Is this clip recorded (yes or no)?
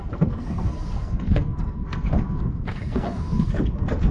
no